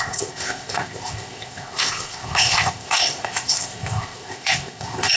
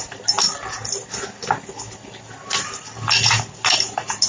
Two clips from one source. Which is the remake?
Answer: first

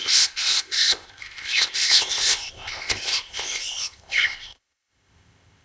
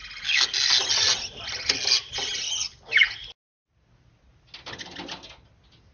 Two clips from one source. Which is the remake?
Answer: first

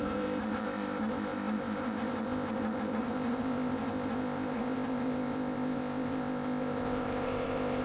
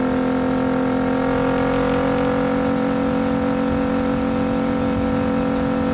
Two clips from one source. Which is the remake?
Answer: first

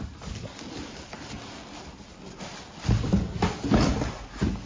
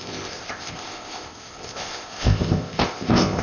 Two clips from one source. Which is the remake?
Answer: second